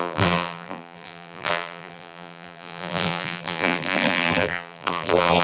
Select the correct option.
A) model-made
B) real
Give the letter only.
A